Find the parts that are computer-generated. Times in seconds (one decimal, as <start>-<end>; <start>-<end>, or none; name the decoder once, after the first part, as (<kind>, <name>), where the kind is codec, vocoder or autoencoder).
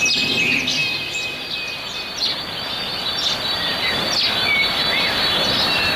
none